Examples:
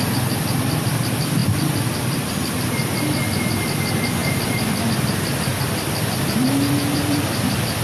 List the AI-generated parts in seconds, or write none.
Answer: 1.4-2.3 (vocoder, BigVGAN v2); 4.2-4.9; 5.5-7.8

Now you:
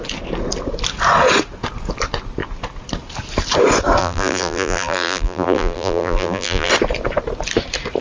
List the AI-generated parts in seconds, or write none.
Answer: 4.0-6.7 (vocoder, BigVGAN v2)

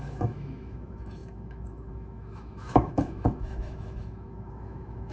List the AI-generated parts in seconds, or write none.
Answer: 0.0-5.1 (autoencoder, DAC-VAE)